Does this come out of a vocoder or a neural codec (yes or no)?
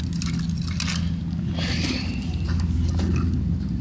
no